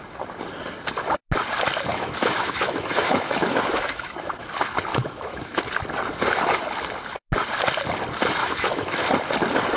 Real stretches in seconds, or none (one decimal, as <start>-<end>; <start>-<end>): 0.0-1.9; 4.5-4.9; 5.6-8.4; 9.0-9.8